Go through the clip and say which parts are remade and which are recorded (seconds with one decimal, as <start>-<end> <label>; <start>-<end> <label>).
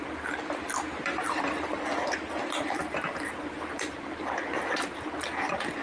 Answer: 0.0-5.8 recorded